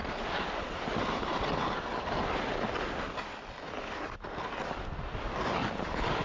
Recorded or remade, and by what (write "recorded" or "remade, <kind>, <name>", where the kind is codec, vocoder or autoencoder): recorded